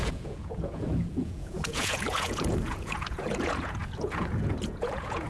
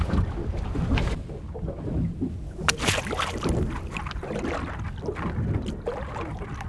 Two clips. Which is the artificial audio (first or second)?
first